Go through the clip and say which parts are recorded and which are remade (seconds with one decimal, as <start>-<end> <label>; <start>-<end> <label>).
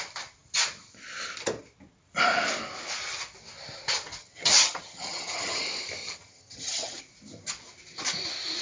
0.0-4.2 recorded; 4.2-5.6 remade; 5.6-6.0 recorded; 6.0-7.0 remade; 7.0-8.6 recorded